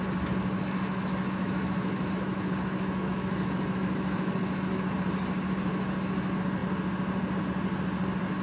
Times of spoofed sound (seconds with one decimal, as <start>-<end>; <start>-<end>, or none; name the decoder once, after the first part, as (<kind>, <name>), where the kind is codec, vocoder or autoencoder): 0.4-5.0 (autoencoder, DAC-VAE)